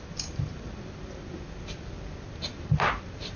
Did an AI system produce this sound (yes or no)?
no